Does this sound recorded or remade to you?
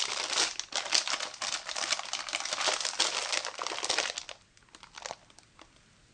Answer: recorded